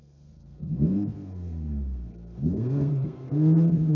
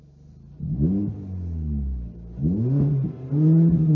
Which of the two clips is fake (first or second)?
first